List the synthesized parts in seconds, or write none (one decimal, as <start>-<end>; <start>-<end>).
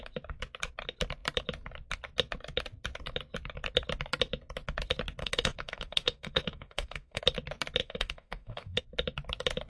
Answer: 5.2-7.2; 7.8-8.8